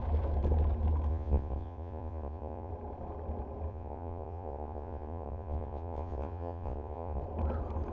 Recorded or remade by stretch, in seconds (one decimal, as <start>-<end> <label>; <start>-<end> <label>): 0.0-1.1 recorded; 1.1-2.7 remade; 2.7-3.7 recorded; 3.7-7.2 remade; 7.2-7.9 recorded